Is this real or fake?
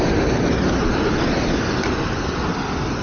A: real